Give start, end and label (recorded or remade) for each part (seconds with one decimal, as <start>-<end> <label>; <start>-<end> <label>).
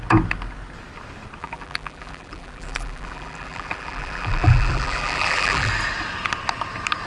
0.0-1.4 recorded; 1.4-5.7 remade; 5.7-7.1 recorded